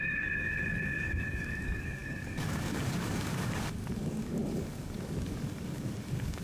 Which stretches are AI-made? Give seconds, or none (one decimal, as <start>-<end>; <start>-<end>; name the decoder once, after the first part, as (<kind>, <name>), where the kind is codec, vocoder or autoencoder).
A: 0.0-6.4 (codec, DAC)